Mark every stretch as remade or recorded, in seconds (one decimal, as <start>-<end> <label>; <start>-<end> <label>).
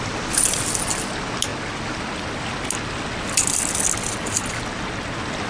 0.0-5.5 recorded